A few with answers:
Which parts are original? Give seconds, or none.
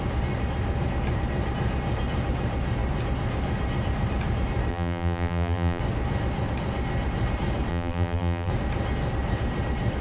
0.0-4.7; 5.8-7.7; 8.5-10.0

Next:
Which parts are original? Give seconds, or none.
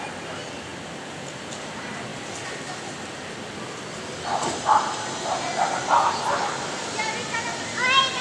0.0-8.2